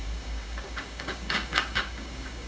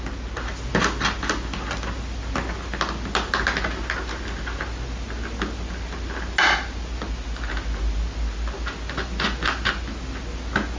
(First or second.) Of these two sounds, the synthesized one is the first